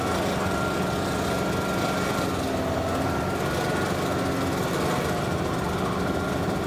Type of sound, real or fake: real